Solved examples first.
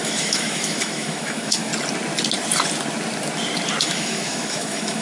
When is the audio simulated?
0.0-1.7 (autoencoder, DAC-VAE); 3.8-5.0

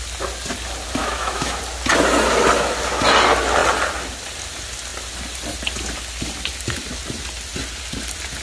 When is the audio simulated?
1.0-1.6 (autoencoder, DAC-VAE)

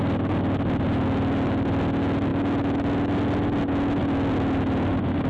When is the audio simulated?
none

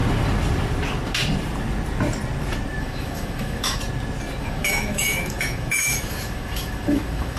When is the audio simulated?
2.8-3.8 (autoencoder, DAC-VAE); 4.4-7.4

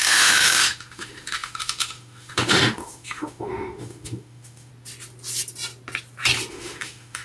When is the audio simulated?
0.0-4.7 (autoencoder, DAC-VAE); 6.5-7.2

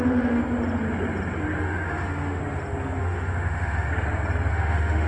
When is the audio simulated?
0.0-0.4 (autoencoder, DAC-VAE); 1.6-2.4; 3.0-3.9; 4.5-5.1